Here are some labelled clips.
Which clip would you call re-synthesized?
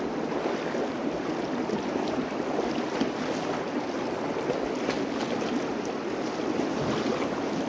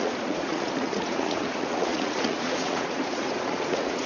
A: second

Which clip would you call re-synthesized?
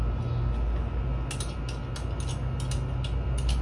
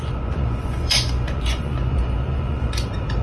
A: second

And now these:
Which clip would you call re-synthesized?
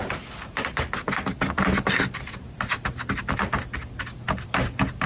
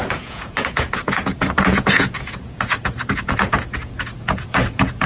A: second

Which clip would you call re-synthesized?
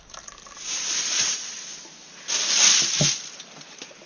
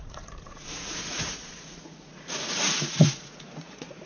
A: second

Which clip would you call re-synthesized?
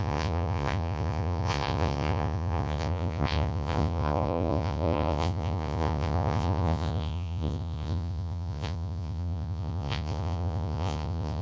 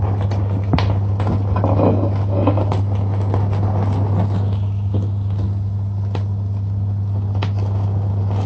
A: first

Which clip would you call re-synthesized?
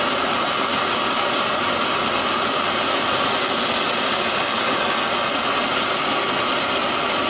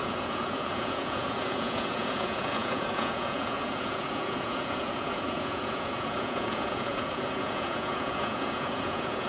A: second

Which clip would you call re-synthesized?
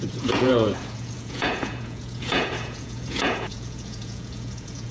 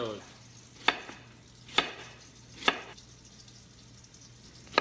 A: first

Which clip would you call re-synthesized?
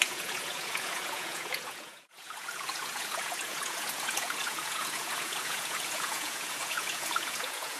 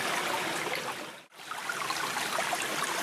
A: first